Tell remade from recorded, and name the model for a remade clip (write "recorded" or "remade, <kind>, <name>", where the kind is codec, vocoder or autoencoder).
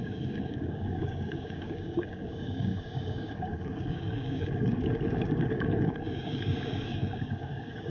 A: remade, codec, DAC